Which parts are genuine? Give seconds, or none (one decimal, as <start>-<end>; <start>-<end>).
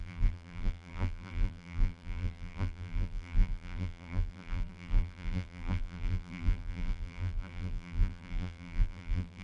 none